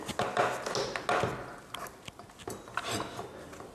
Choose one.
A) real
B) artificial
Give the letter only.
A